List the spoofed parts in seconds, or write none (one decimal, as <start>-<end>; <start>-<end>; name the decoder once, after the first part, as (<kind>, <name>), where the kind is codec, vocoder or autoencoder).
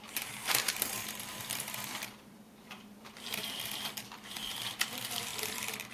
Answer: 0.0-5.3 (vocoder, BigVGAN v2)